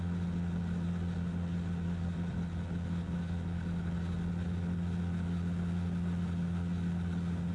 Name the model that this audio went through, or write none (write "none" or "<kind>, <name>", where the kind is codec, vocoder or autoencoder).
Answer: none